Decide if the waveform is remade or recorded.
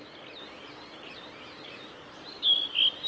recorded